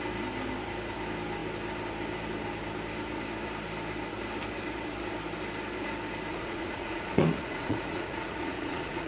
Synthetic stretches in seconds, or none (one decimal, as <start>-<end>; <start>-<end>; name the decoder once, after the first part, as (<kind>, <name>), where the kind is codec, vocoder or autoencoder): 6.3-9.1 (vocoder, Vocos)